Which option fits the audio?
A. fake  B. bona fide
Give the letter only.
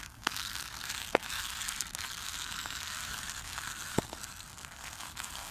A